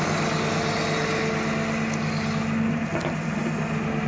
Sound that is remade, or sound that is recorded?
recorded